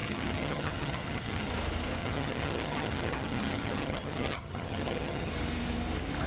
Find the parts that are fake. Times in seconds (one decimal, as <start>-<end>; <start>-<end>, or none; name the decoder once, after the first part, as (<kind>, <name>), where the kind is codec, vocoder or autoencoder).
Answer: 0.0-1.5 (vocoder, HiFi-GAN); 2.0-5.3